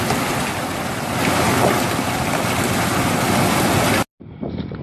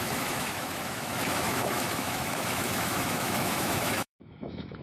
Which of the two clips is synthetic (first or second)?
second